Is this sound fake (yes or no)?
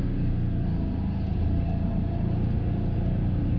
no